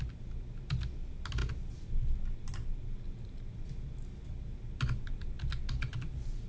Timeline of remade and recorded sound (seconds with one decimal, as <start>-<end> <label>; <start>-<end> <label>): 0.0-6.5 recorded